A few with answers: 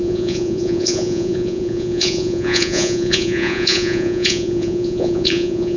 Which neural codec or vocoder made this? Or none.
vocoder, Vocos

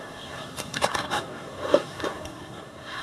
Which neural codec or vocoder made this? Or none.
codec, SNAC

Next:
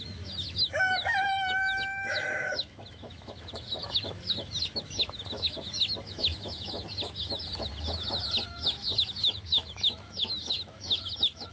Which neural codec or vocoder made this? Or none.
autoencoder, DAC-VAE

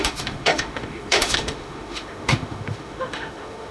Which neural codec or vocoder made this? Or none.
autoencoder, DAC-VAE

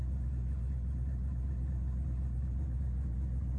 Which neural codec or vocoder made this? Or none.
none